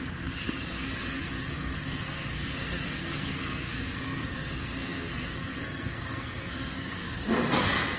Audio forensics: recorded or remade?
remade